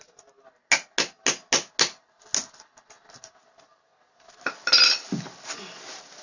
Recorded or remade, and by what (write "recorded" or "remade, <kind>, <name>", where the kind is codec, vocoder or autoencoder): recorded